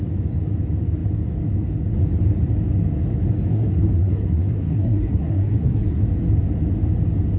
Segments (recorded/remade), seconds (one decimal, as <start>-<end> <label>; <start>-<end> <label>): 0.0-3.5 recorded; 3.5-6.0 remade; 6.0-7.4 recorded